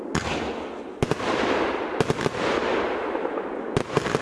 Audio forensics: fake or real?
real